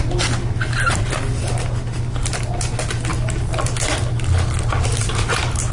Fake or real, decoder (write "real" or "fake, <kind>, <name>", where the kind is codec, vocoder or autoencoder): real